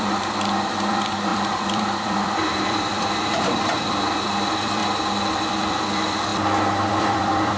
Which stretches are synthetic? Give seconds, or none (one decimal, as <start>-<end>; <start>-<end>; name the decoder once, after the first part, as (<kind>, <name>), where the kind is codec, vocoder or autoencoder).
0.0-4.8 (vocoder, BigVGAN v2); 5.3-6.3; 6.9-7.6